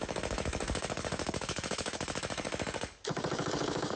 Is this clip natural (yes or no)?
no